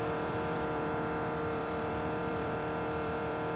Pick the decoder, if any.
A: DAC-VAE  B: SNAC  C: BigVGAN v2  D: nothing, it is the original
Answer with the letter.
C